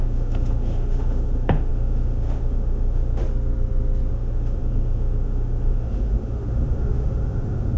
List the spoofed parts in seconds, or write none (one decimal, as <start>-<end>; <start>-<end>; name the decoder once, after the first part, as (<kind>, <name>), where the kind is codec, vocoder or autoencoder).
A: 0.0-3.2 (autoencoder, DAC-VAE); 4.1-7.8